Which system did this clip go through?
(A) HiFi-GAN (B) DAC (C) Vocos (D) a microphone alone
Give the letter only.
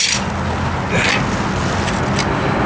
D